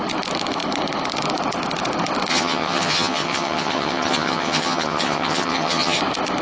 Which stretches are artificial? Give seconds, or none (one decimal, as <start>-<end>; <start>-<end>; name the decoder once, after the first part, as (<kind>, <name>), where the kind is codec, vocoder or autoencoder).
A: 2.3-6.0 (vocoder, HiFi-GAN)